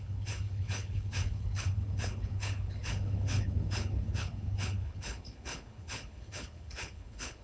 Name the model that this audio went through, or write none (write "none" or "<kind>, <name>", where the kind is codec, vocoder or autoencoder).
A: codec, HILCodec